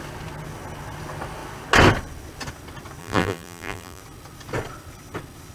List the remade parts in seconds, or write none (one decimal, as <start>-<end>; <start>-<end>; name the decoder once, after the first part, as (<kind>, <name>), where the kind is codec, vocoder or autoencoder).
3.0-4.0 (vocoder, BigVGAN v2)